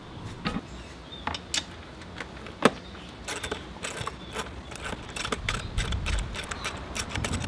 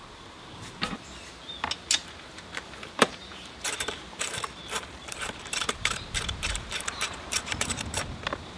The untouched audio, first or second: first